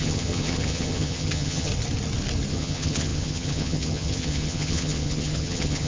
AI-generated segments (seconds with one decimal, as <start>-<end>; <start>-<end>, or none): 0.0-1.7; 2.5-5.9